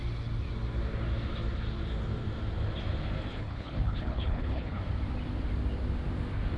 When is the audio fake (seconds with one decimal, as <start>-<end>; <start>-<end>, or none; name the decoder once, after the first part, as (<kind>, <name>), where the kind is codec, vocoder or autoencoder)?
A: 3.3-4.8 (codec, HILCodec)